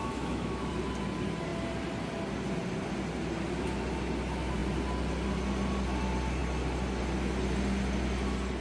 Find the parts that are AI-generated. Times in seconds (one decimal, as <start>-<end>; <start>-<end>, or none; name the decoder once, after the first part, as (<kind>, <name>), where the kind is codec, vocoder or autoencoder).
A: 0.0-0.7 (autoencoder, DAC-VAE)